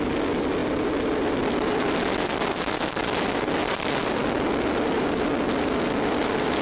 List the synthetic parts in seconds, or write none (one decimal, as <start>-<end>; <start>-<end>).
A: none